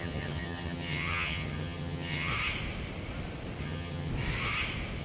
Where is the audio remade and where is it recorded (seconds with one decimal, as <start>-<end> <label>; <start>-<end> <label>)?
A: 0.0-2.3 remade; 2.3-3.6 recorded; 3.6-4.1 remade; 4.1-5.0 recorded